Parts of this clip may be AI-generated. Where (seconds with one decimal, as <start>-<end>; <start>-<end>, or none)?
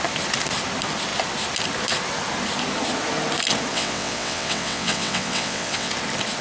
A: 3.7-5.9